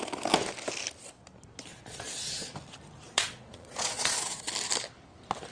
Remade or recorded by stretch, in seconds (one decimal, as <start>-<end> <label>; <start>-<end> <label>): 0.0-1.7 recorded; 1.7-2.5 remade; 2.5-3.1 recorded; 3.1-4.5 remade; 4.5-5.5 recorded